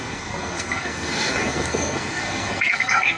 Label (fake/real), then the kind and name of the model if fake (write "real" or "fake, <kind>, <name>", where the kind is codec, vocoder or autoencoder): fake, codec, SNAC